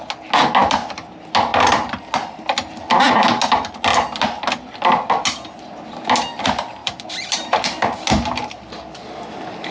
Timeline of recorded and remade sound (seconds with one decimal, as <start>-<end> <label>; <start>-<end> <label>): 0.0-1.5 recorded; 1.5-2.0 remade; 2.0-6.8 recorded; 6.8-8.7 remade; 8.7-9.7 recorded